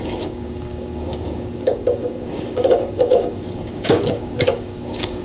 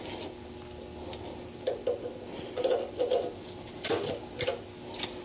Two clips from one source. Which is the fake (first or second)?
first